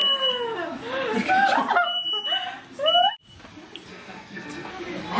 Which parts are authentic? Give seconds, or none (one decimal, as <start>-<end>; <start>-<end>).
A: 0.0-3.9; 4.7-5.2

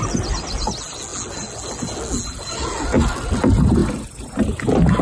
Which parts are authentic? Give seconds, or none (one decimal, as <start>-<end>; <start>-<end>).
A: 0.0-5.0

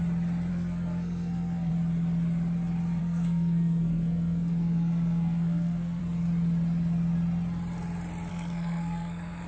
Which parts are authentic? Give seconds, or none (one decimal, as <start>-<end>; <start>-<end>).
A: 0.0-0.5; 1.7-3.0; 6.0-8.3

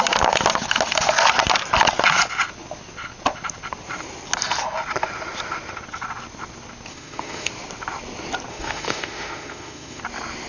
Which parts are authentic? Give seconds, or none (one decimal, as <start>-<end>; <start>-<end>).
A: 0.0-6.9; 7.5-8.5; 10.0-10.5

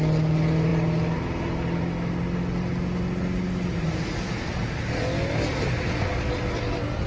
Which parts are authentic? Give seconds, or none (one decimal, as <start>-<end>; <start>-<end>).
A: 0.0-7.1

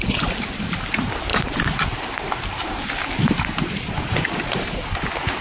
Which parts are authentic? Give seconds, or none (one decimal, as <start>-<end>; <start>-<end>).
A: 0.0-5.4

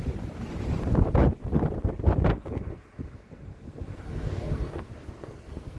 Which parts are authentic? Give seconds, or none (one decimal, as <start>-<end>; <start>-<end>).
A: 0.0-2.3

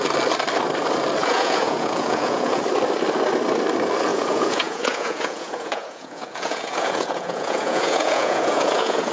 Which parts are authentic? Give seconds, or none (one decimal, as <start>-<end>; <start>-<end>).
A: 0.0-1.2; 2.6-4.1